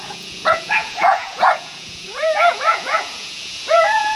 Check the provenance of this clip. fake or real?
fake